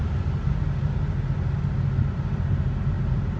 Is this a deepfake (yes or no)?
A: no